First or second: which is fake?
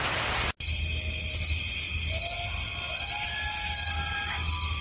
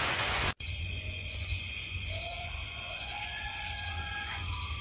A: second